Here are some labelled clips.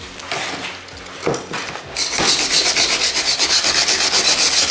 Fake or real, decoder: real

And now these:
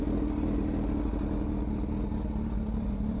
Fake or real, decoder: real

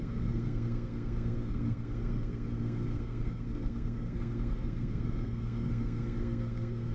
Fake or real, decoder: fake, codec, SNAC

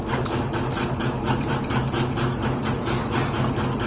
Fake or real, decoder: real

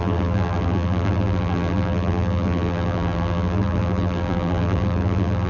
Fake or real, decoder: fake, vocoder, BigVGAN v2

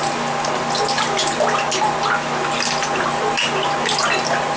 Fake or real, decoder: real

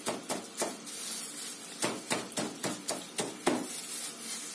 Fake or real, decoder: real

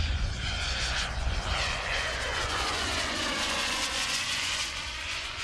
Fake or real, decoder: fake, vocoder, Vocos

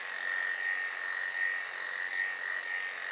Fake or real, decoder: real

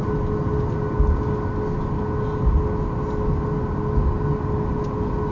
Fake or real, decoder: real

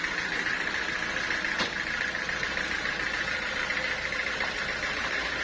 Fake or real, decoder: real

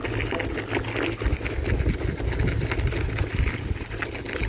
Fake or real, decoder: real